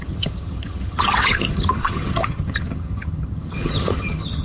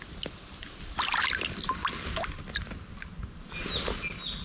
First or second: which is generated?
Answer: first